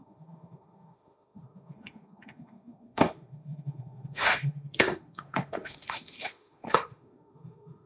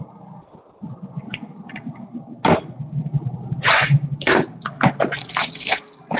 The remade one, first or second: first